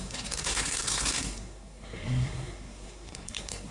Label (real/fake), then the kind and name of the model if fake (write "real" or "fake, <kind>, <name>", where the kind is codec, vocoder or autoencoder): fake, codec, SNAC